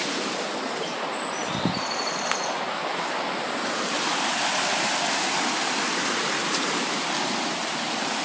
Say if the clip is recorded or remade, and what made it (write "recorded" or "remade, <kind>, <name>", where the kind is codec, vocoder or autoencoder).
recorded